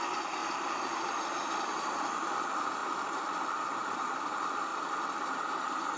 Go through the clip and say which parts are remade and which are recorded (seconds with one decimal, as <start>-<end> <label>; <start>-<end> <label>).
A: 0.0-0.4 recorded; 0.4-1.9 remade; 1.9-2.8 recorded; 2.8-4.3 remade; 4.3-4.7 recorded; 4.7-5.3 remade; 5.3-6.0 recorded